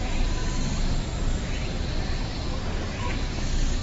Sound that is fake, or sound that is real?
real